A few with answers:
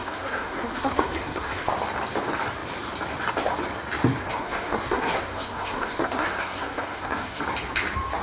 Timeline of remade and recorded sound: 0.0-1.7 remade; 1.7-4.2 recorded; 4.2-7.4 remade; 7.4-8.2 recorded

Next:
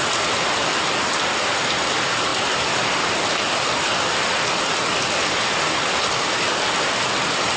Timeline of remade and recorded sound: 0.0-7.6 recorded

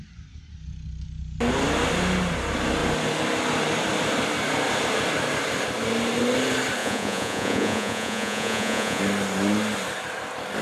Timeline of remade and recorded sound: 0.0-6.8 recorded; 6.8-9.0 remade; 9.0-10.6 recorded

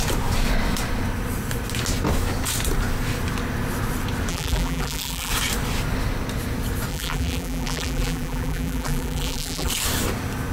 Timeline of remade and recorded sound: 0.0-4.3 recorded; 4.3-5.3 remade; 5.3-6.9 recorded; 6.9-9.7 remade; 9.7-10.5 recorded

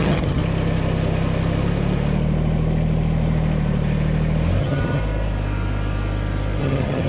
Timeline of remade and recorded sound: 0.0-0.4 remade; 0.4-4.6 recorded; 4.6-5.0 remade; 5.0-6.6 recorded; 6.6-7.1 remade